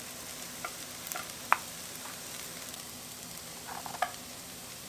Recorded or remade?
remade